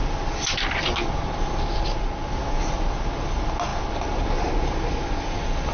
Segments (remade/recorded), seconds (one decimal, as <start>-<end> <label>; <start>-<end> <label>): 0.0-5.7 recorded